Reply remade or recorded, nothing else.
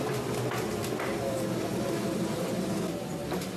recorded